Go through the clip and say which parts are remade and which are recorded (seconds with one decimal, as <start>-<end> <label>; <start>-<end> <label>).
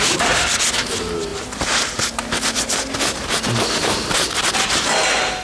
0.0-5.4 recorded